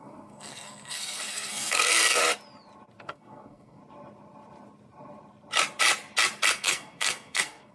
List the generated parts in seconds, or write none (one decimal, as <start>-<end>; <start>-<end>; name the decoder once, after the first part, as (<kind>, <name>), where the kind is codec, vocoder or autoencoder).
0.0-2.2 (codec, SNAC); 3.0-3.8; 6.5-7.7